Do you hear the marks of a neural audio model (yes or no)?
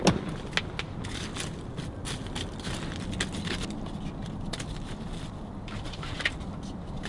no